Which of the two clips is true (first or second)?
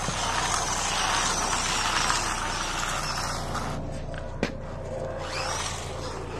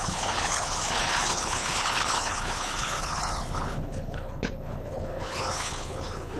first